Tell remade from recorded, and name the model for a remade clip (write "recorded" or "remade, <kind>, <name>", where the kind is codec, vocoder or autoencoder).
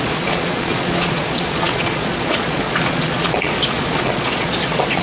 remade, vocoder, Vocos